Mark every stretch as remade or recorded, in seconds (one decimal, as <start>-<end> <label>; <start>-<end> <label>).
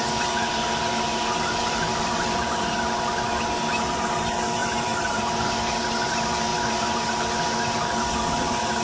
0.0-1.1 recorded; 1.1-2.7 remade; 2.7-4.6 recorded; 4.6-5.2 remade; 5.2-8.8 recorded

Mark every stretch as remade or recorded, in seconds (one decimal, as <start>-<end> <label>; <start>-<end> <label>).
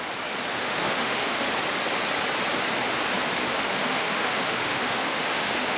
0.0-0.6 recorded; 0.6-1.5 remade; 1.5-3.4 recorded; 3.4-5.8 remade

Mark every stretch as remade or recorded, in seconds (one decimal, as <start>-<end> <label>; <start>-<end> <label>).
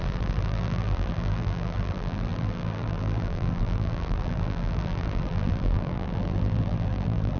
0.0-7.4 remade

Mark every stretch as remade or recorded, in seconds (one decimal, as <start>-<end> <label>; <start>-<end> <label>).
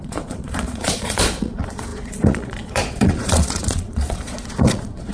0.0-5.1 remade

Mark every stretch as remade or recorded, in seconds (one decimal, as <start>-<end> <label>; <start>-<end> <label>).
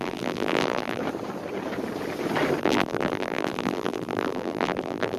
0.0-1.0 remade; 1.0-2.6 recorded; 2.6-5.2 remade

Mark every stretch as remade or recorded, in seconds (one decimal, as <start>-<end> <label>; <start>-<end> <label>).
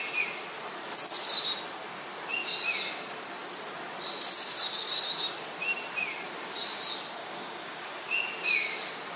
0.0-7.2 recorded; 7.2-7.9 remade; 7.9-9.2 recorded